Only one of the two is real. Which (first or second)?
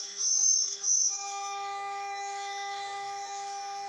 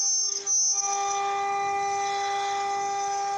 second